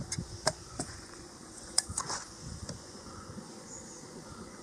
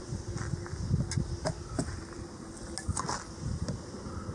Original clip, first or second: second